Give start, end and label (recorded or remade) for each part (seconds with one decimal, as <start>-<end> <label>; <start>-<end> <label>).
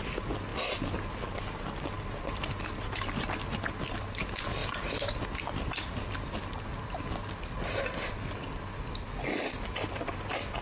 0.0-4.6 recorded; 4.6-5.2 remade; 5.2-10.6 recorded